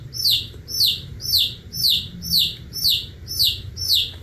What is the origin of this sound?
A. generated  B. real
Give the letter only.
B